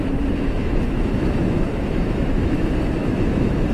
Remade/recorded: remade